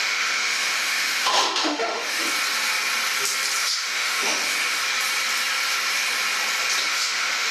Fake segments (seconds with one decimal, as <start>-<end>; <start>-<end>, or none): 0.0-2.2; 3.6-4.8; 6.9-7.5